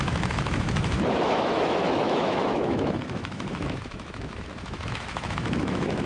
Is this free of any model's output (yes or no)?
no